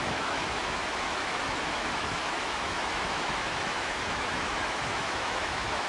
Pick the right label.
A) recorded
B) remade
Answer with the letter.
B